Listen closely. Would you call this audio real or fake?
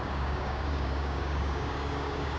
fake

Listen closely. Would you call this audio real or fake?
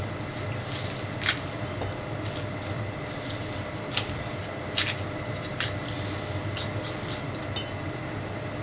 real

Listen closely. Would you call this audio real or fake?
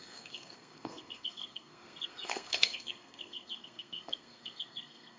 fake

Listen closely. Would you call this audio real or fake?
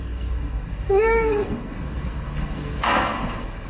fake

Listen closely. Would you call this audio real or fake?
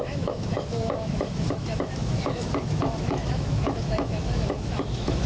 fake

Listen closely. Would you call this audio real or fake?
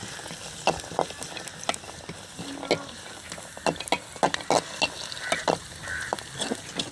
real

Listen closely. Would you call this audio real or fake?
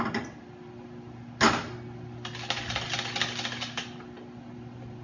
real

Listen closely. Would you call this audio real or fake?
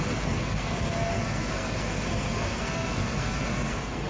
fake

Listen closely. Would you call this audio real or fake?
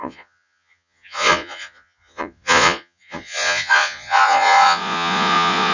fake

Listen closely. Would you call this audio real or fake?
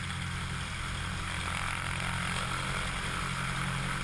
real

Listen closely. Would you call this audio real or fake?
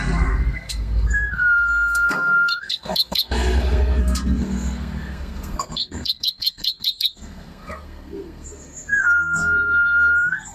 fake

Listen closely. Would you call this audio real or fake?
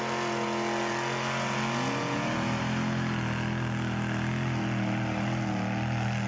real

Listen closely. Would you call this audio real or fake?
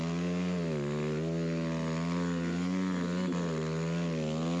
real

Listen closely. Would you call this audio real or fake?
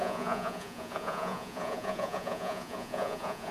fake